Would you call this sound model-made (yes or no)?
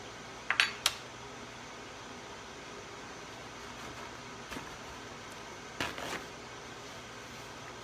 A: no